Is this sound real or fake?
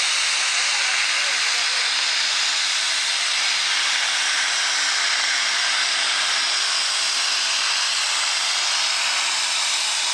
real